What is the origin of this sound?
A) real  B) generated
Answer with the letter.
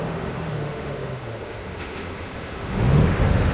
B